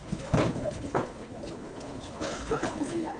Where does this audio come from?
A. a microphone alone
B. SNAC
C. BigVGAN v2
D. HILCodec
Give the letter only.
D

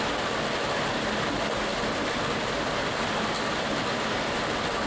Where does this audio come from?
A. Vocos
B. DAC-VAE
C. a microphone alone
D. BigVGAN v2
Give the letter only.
C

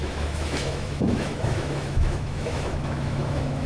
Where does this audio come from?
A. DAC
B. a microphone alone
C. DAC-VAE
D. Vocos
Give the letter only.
C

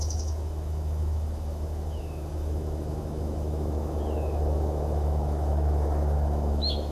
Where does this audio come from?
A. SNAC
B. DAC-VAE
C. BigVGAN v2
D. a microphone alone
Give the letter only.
B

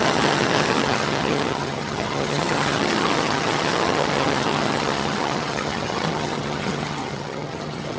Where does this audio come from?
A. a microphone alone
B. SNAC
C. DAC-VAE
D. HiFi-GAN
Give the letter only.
D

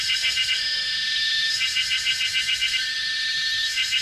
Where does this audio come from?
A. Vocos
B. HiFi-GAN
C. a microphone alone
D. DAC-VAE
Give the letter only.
D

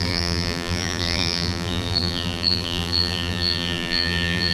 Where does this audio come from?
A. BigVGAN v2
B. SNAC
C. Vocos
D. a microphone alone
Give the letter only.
A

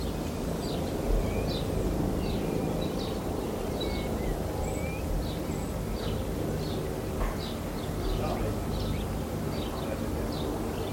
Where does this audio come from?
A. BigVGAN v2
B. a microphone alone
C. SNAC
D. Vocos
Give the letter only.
B